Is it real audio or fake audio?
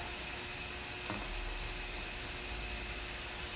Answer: real